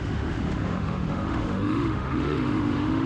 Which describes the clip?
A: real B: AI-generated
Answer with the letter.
B